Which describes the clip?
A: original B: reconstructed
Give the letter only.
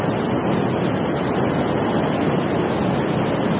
A